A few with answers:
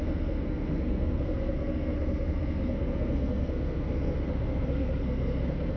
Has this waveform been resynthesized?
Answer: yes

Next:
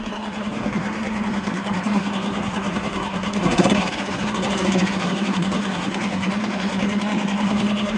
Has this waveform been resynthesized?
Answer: yes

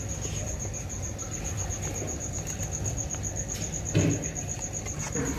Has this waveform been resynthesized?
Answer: no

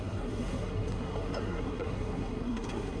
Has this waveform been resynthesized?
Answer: yes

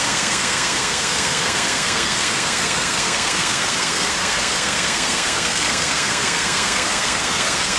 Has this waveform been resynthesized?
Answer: yes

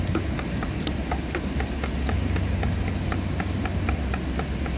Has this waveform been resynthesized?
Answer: no